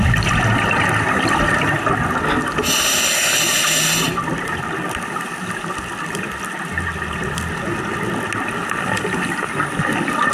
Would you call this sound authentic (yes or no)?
yes